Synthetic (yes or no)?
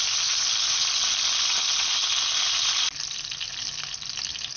no